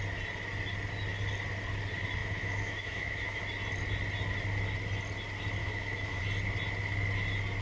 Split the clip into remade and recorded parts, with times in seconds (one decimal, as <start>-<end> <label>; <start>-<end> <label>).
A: 0.0-2.2 recorded; 2.2-3.4 remade; 3.4-5.6 recorded; 5.6-6.2 remade; 6.2-7.6 recorded